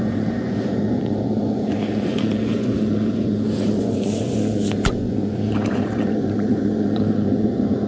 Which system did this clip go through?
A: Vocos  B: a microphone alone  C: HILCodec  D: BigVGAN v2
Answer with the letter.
A